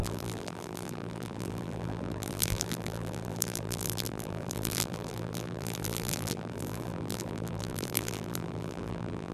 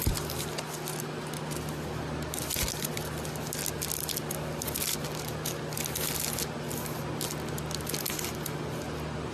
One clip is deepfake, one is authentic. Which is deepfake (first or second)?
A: first